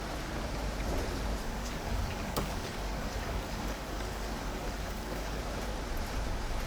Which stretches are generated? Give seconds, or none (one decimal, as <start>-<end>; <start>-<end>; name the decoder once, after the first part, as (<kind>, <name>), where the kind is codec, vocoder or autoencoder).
1.4-5.4 (codec, DAC)